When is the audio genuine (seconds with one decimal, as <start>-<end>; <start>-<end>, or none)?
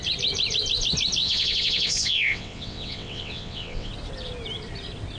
0.0-1.2; 3.9-5.2